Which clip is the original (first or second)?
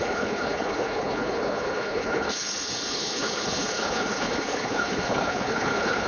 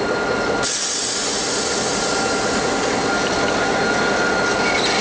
second